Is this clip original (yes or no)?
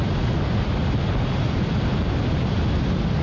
yes